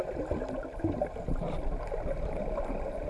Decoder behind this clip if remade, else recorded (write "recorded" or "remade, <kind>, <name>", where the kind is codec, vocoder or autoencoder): recorded